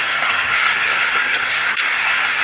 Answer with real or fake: fake